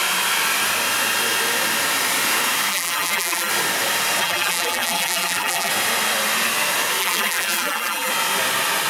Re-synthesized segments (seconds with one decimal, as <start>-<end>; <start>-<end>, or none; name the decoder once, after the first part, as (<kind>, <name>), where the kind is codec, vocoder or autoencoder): 2.7-3.5 (vocoder, BigVGAN v2); 4.2-5.7; 7.0-8.1